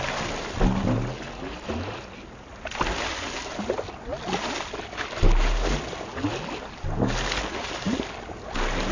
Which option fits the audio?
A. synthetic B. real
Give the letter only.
B